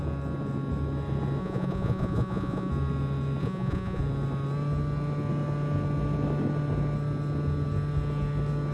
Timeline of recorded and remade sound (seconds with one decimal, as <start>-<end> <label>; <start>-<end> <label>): 0.0-1.4 recorded; 1.4-2.7 remade; 2.7-3.4 recorded; 3.4-4.0 remade; 4.0-8.7 recorded

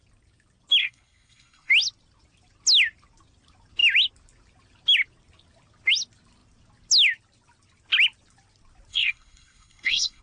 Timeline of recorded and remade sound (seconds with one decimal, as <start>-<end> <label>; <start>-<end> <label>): 0.0-0.8 recorded; 0.8-1.7 remade; 1.7-8.9 recorded; 8.9-10.2 remade

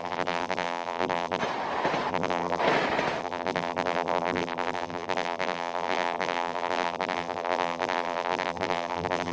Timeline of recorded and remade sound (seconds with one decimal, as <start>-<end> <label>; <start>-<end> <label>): 0.0-1.4 remade; 1.4-2.1 recorded; 2.1-2.6 remade; 2.6-3.2 recorded; 3.2-9.3 remade

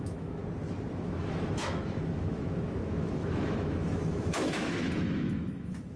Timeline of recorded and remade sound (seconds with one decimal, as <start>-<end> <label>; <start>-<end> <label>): 0.0-0.4 remade; 0.4-0.9 recorded; 0.9-6.0 remade

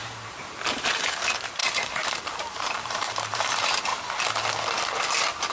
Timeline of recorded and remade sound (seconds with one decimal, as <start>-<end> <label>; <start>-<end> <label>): 0.0-3.9 remade; 3.9-5.5 recorded